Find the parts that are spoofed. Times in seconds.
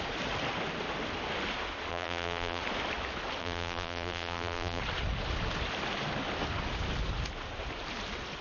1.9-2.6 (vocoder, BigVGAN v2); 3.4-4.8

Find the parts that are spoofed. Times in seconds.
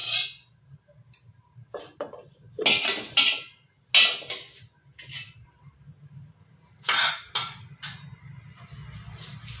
8.5-9.6 (vocoder, BigVGAN v2)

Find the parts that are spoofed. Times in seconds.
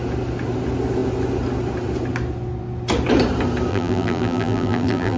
3.7-5.2 (vocoder, BigVGAN v2)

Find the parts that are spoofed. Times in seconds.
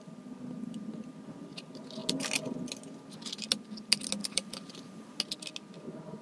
4.2-5.2 (vocoder, BigVGAN v2)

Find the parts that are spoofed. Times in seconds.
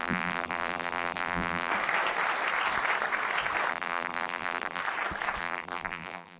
0.0-1.7 (vocoder, BigVGAN v2); 3.7-4.8; 5.4-6.4